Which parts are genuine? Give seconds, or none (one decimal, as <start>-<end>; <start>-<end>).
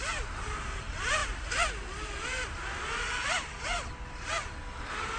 0.0-5.2